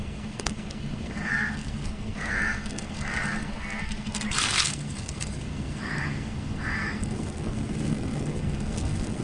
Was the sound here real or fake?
fake